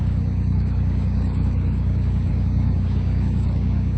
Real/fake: fake